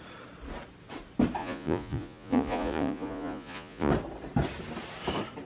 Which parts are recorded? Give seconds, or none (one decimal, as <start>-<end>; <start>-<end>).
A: 0.0-1.4; 3.9-5.5